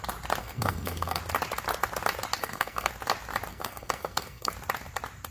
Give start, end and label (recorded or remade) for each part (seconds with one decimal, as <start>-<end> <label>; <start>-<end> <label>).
0.0-0.4 recorded; 0.4-1.2 remade; 1.2-2.4 recorded; 2.4-2.9 remade; 2.9-3.5 recorded; 3.5-4.5 remade; 4.5-5.3 recorded